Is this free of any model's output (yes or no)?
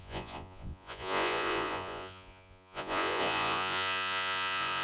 no